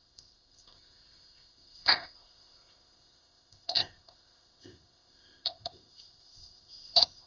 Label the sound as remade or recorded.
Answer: remade